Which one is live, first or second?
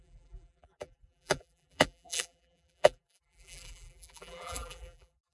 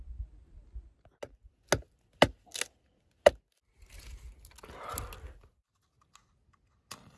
second